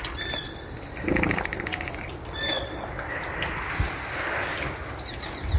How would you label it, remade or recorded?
remade